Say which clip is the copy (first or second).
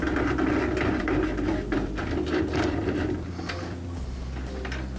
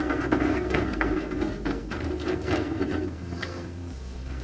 second